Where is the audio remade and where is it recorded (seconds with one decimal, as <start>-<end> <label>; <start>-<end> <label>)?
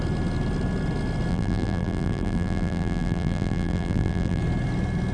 0.0-1.3 recorded; 1.3-4.4 remade; 4.4-5.1 recorded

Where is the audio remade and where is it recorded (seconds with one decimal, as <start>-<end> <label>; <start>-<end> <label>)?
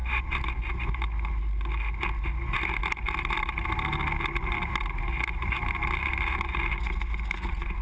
0.0-7.8 recorded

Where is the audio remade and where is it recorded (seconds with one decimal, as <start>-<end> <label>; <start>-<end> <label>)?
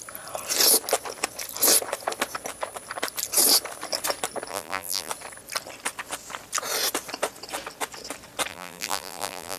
0.0-4.5 recorded; 4.5-5.1 remade; 5.1-8.5 recorded; 8.5-9.6 remade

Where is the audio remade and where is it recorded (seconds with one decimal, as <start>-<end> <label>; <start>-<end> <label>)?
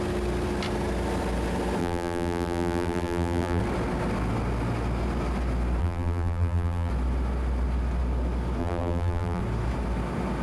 0.0-1.8 recorded; 1.8-3.6 remade; 3.6-5.8 recorded; 5.8-6.9 remade; 6.9-8.6 recorded; 8.6-9.4 remade; 9.4-10.4 recorded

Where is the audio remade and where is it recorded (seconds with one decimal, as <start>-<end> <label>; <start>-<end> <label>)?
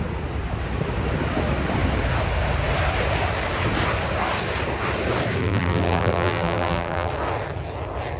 0.0-5.4 recorded; 5.4-7.1 remade; 7.1-8.2 recorded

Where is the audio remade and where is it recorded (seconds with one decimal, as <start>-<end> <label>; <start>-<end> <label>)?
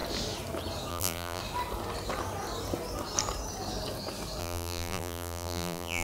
0.0-0.9 recorded; 0.9-1.4 remade; 1.4-4.4 recorded; 4.4-6.0 remade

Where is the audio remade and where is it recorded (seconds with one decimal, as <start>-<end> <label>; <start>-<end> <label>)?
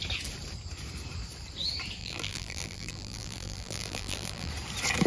0.0-2.0 recorded; 2.0-4.5 remade; 4.5-5.1 recorded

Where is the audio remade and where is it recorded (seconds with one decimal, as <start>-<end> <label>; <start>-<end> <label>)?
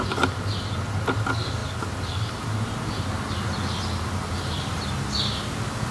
0.0-5.9 recorded